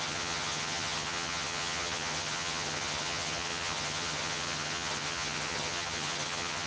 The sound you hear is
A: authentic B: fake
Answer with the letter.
B